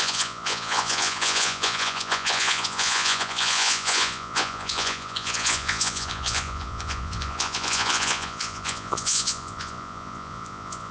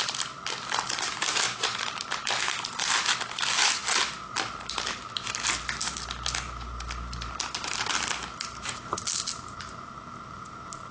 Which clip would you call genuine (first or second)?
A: second